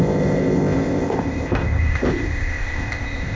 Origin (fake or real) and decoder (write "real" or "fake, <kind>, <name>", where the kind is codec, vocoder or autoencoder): fake, codec, ZipCodec